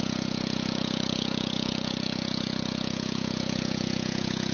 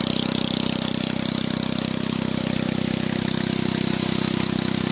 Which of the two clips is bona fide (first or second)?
second